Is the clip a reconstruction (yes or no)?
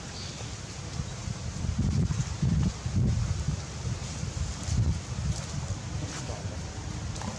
no